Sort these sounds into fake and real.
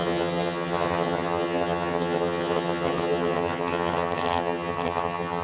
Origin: fake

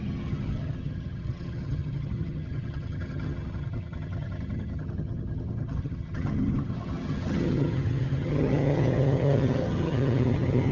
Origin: fake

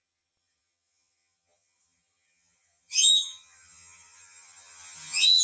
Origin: fake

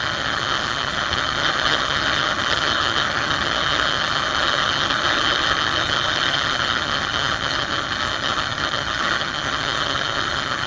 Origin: fake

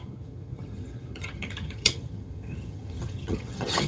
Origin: fake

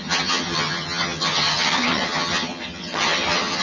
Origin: fake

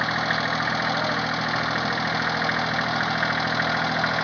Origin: real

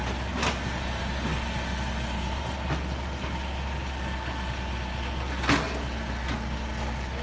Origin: real